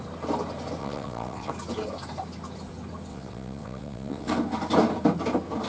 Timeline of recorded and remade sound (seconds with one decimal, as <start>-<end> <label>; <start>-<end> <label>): 0.0-0.8 recorded; 0.8-1.5 remade; 1.5-3.1 recorded; 3.1-4.3 remade; 4.3-5.7 recorded